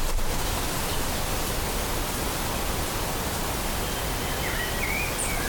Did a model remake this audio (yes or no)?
no